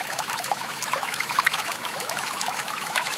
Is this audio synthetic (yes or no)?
yes